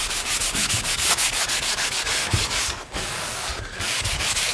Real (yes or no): no